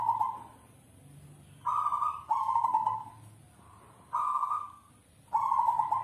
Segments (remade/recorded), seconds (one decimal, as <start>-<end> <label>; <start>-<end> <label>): 0.0-2.4 recorded; 2.4-3.1 remade; 3.1-4.2 recorded; 4.2-4.9 remade; 4.9-6.0 recorded